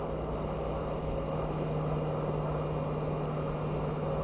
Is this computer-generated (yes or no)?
no